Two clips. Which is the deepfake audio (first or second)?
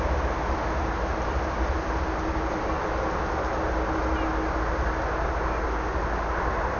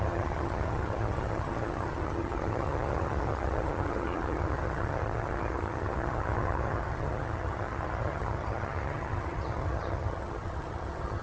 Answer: second